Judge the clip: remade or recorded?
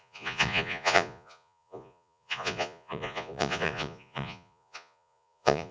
remade